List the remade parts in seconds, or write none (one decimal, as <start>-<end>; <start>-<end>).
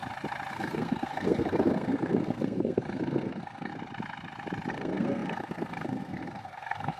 0.5-3.7; 4.7-7.0